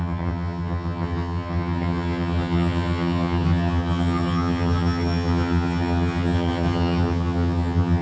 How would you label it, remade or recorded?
remade